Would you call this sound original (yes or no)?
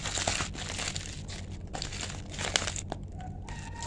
yes